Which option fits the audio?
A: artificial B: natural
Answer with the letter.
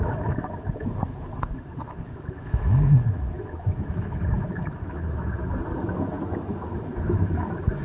A